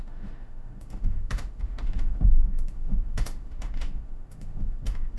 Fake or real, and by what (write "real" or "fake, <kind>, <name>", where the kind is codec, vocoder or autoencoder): fake, autoencoder, DAC-VAE